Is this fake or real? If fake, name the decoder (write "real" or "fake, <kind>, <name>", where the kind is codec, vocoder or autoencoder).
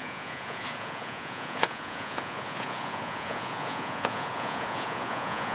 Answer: fake, vocoder, Vocos